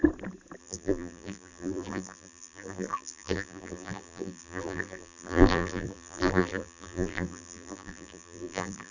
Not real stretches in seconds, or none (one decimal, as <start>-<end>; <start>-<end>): 0.6-8.9